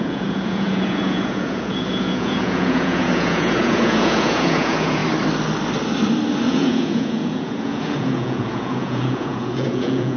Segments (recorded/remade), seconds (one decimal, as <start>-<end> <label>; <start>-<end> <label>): 0.0-5.0 remade; 5.0-6.4 recorded; 6.4-10.2 remade